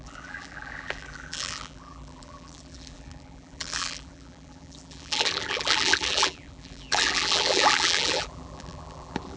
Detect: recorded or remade remade